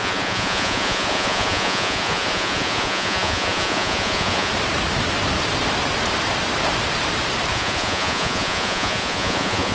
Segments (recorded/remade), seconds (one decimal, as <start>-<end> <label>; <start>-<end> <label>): 0.0-4.5 remade; 4.5-7.5 recorded; 7.5-9.7 remade